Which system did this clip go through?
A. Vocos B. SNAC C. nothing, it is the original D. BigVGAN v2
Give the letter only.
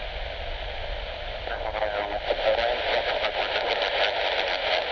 C